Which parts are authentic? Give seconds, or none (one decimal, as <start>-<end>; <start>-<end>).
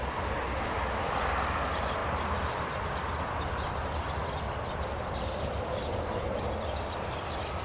0.0-7.6